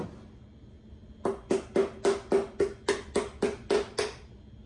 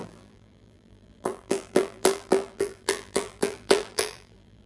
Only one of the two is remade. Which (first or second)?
second